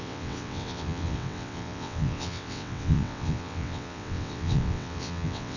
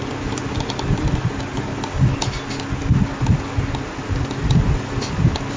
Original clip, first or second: second